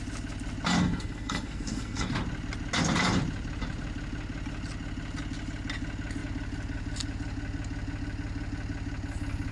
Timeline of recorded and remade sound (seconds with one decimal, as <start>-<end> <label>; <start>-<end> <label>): 0.0-0.8 recorded; 0.8-2.1 remade; 2.1-9.5 recorded

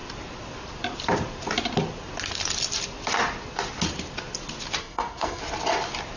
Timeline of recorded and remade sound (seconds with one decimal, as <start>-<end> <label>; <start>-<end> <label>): 0.0-4.8 recorded; 4.8-5.4 remade; 5.4-6.2 recorded

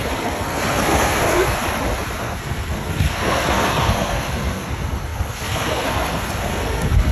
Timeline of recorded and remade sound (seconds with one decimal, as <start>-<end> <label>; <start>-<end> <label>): 0.0-1.6 remade; 1.6-2.2 recorded; 2.2-7.1 remade

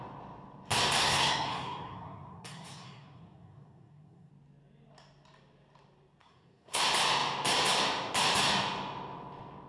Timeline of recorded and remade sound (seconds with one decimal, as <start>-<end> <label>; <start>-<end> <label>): 0.0-1.0 recorded; 1.0-4.3 remade; 4.3-6.2 recorded; 6.2-6.8 remade; 6.8-9.7 recorded

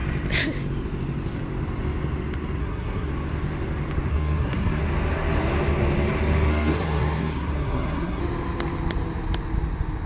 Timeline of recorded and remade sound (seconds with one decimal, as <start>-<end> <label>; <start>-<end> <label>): 0.0-2.6 recorded; 2.6-3.1 remade; 3.1-4.1 recorded; 4.1-4.8 remade; 4.8-6.5 recorded; 6.5-8.2 remade; 8.2-10.1 recorded

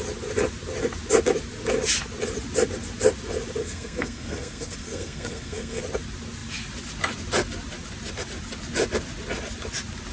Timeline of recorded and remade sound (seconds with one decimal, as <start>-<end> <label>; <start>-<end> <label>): 0.0-3.6 recorded; 3.6-5.8 remade; 5.8-10.1 recorded